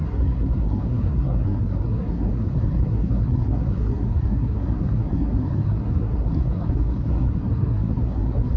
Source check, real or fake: fake